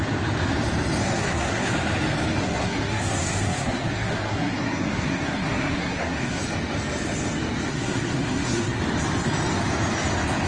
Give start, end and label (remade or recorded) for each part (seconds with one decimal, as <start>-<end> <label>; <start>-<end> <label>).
0.0-1.0 recorded; 1.0-1.7 remade; 1.7-2.4 recorded; 2.4-6.4 remade; 6.4-7.7 recorded; 7.7-8.8 remade; 8.8-10.5 recorded